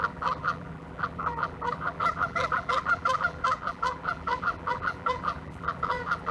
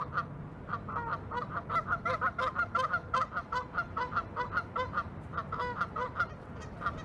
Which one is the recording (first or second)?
second